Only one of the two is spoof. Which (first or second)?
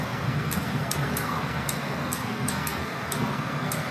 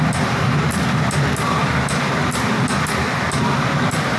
first